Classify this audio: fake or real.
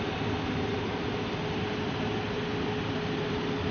real